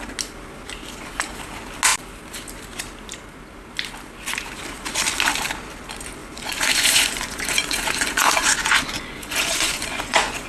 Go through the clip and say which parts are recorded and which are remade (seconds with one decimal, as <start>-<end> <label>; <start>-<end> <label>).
0.0-6.2 recorded; 6.2-10.5 remade